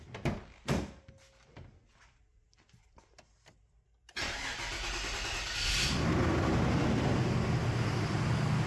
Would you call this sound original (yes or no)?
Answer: yes